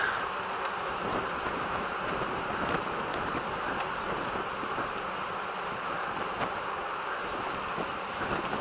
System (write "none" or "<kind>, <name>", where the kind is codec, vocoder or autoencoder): none